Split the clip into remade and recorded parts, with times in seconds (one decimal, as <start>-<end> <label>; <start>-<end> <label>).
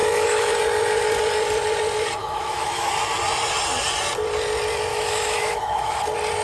0.0-0.5 remade; 0.5-2.2 recorded; 2.2-2.9 remade; 2.9-4.9 recorded; 4.9-6.0 remade; 6.0-6.4 recorded